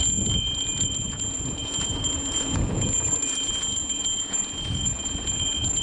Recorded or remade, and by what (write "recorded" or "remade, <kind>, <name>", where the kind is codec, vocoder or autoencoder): remade, vocoder, Vocos